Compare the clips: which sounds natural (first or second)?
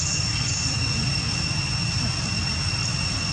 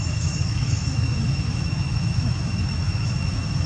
first